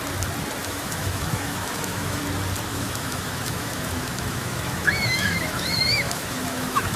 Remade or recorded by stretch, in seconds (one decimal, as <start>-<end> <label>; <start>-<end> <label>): 0.0-0.6 recorded; 0.6-2.2 remade; 2.2-2.7 recorded; 2.7-7.0 remade